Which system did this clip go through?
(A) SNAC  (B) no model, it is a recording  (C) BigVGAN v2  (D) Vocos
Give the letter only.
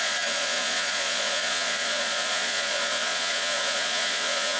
D